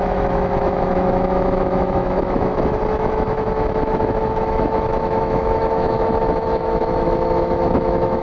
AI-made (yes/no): yes